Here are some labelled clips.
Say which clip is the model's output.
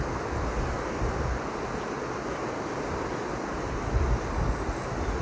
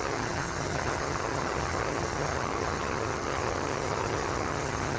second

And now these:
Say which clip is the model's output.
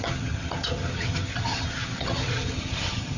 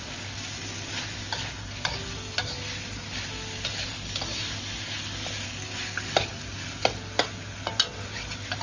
first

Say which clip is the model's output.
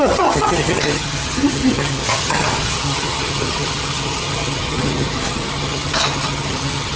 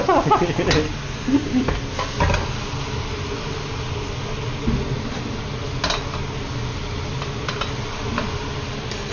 first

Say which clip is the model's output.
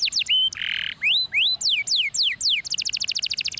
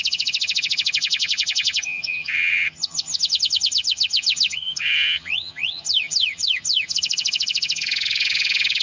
second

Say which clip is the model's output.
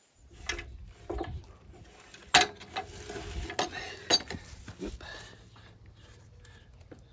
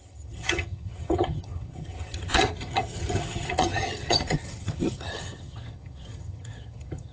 second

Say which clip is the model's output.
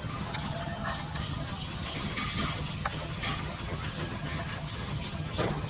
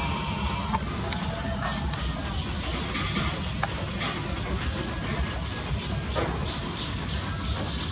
first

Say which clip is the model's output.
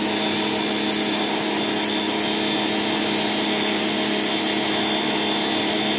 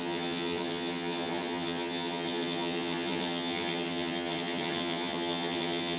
second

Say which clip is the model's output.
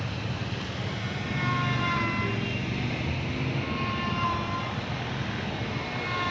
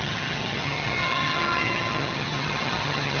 second